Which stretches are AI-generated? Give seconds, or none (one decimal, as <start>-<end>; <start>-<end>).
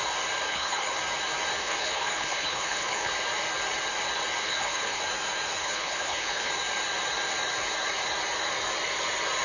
0.5-1.0; 1.6-3.1; 4.4-5.0; 5.6-6.5